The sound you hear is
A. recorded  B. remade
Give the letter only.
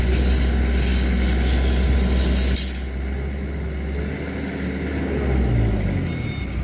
A